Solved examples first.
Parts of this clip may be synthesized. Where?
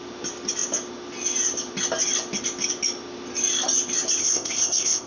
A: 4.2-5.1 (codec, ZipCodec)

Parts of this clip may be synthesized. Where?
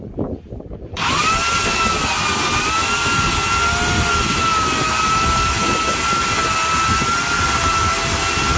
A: none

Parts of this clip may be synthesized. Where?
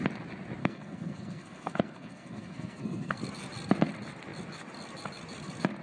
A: 0.6-3.2 (codec, SNAC)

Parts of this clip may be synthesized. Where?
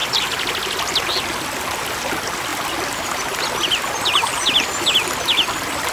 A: none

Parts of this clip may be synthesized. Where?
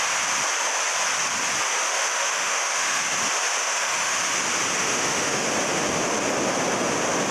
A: 1.7-3.0 (autoencoder, DAC-VAE); 3.6-4.2; 4.8-5.4